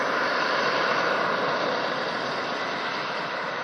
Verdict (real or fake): real